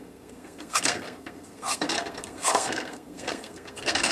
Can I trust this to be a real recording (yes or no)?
no